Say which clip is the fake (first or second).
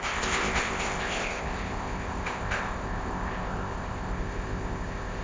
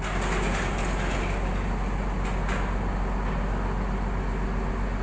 first